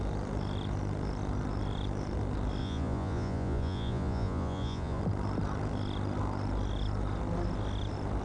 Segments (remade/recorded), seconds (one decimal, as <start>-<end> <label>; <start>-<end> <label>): 0.0-2.6 recorded; 2.6-5.0 remade; 5.0-8.2 recorded